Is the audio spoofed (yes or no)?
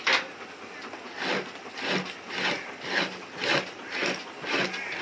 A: no